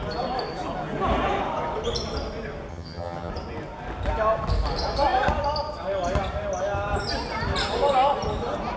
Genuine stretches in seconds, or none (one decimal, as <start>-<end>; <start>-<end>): 0.0-2.7; 3.3-8.8